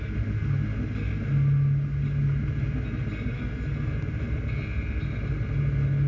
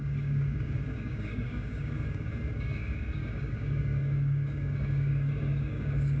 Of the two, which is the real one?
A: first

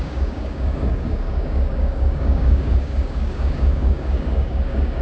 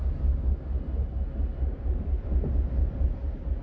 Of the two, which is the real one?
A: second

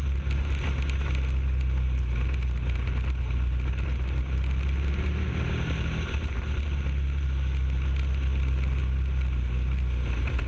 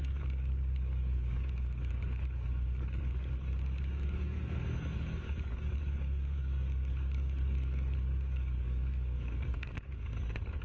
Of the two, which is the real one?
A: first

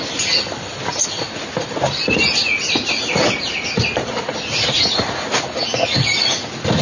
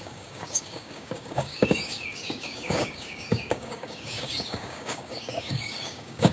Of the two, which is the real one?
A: first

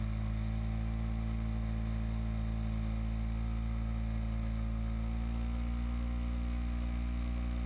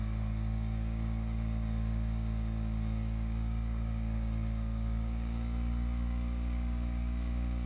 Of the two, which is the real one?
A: first